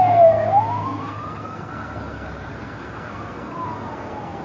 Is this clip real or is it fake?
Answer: fake